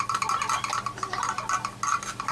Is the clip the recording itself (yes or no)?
yes